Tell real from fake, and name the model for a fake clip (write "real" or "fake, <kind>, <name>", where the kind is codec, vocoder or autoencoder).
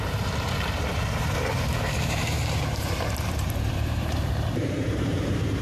fake, vocoder, BigVGAN v2